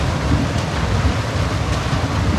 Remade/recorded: recorded